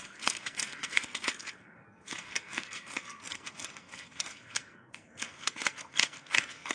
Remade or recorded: remade